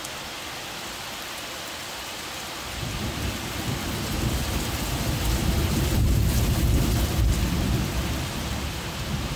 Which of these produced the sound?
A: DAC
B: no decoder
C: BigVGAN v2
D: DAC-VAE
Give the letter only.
B